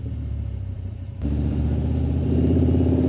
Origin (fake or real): fake